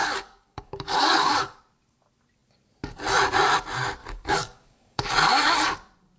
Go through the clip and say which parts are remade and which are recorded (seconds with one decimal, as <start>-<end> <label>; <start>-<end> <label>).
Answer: 0.0-1.6 remade; 1.6-4.0 recorded; 4.0-5.0 remade; 5.0-6.2 recorded